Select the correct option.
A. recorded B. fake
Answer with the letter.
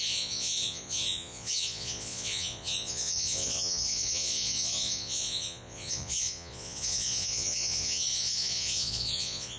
B